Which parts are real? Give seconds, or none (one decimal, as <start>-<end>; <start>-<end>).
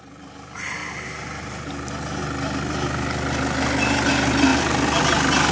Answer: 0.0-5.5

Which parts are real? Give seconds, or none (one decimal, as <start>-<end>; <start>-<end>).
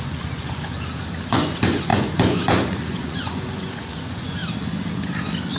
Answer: 0.7-1.3; 4.4-5.6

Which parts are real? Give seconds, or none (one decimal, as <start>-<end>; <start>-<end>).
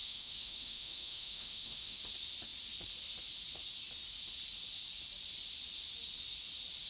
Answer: 2.0-6.9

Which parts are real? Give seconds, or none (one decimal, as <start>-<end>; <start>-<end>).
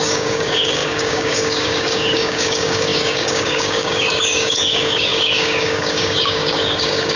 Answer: none